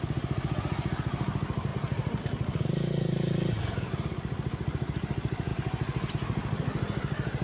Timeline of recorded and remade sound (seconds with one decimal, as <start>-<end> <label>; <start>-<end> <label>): 0.0-1.7 recorded; 1.7-2.2 remade; 2.2-7.4 recorded